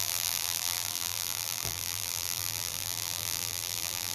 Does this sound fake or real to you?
fake